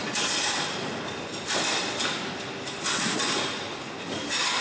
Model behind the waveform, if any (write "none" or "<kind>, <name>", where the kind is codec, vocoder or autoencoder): none